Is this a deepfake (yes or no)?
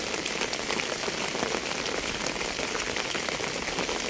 no